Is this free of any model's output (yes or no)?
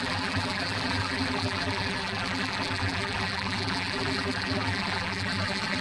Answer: no